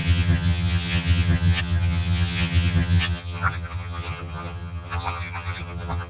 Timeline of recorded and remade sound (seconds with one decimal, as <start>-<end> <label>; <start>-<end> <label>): 0.0-6.1 remade